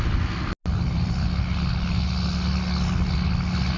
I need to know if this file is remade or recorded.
recorded